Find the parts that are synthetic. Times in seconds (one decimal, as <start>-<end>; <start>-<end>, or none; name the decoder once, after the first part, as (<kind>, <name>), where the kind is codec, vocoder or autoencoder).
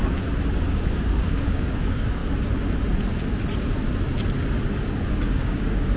0.7-2.2 (codec, DAC); 5.1-6.0